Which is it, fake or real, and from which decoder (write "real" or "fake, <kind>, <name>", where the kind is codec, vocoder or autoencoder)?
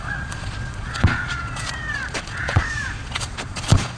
fake, vocoder, Vocos